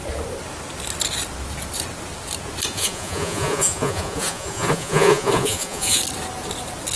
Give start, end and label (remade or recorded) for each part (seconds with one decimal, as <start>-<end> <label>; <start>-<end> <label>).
0.0-2.7 recorded; 2.7-6.0 remade; 6.0-7.0 recorded